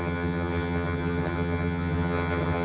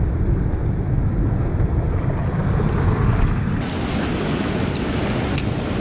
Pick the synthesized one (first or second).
first